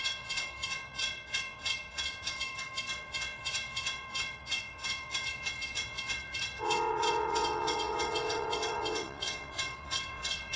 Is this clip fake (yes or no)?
yes